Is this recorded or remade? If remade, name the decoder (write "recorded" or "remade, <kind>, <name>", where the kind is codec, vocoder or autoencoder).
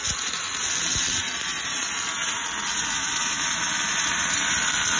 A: remade, vocoder, BigVGAN v2